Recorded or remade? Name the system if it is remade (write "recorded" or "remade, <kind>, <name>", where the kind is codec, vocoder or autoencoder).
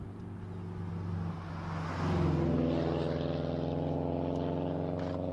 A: recorded